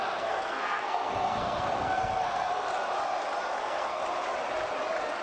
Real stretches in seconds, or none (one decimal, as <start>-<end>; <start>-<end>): 2.7-3.6; 4.0-5.2